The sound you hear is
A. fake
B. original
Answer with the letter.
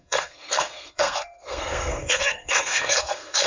A